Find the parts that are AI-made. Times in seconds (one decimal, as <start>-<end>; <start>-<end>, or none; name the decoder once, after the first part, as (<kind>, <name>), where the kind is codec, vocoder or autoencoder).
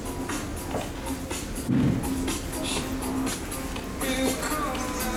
none